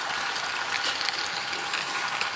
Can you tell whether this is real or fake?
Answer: real